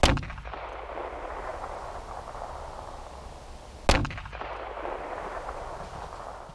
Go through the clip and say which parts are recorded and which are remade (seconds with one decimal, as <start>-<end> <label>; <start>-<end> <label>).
0.0-6.5 recorded